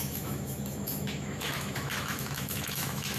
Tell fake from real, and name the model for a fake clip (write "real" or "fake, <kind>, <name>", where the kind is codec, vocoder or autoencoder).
fake, autoencoder, DAC-VAE